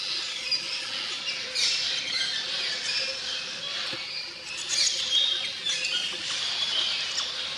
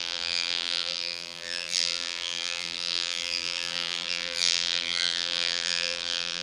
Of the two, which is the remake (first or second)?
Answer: second